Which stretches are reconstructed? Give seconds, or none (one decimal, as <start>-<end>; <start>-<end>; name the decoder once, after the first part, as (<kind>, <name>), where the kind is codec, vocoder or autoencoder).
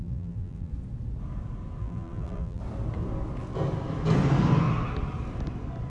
0.0-0.7 (vocoder, BigVGAN v2); 1.8-2.6